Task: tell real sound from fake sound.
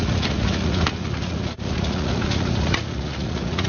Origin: fake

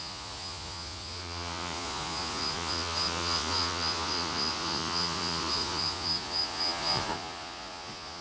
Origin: fake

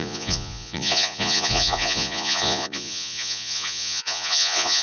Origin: fake